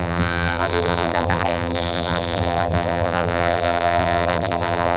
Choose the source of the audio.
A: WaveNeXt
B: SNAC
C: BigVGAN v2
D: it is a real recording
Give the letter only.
C